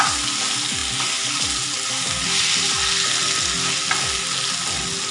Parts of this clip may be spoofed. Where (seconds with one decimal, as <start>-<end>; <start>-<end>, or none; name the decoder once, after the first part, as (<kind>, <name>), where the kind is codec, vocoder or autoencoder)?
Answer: none